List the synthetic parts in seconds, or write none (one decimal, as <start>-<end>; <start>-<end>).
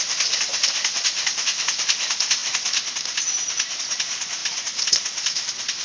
none